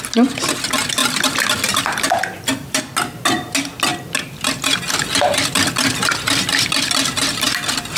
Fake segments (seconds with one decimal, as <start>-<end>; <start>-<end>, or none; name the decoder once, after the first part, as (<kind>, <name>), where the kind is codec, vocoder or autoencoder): 1.0-2.8 (vocoder, BigVGAN v2)